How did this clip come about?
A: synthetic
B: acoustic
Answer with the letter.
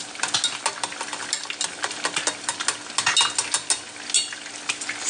B